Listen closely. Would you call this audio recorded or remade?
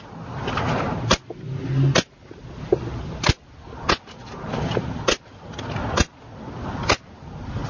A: recorded